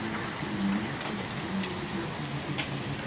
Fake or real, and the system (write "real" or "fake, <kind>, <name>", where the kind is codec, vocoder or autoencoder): real